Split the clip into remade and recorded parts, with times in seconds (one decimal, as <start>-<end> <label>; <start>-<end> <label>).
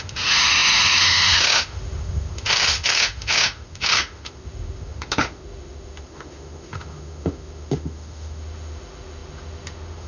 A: 0.0-10.1 remade